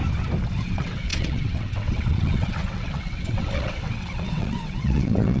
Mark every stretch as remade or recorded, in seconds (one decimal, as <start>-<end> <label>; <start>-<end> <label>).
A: 0.0-0.6 recorded; 0.6-5.4 remade